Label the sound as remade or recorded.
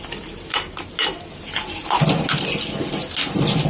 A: recorded